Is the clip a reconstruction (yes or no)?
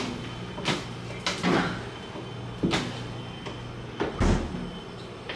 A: no